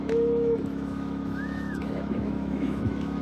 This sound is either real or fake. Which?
fake